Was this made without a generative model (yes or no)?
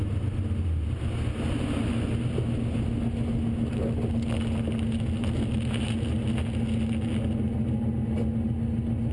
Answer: yes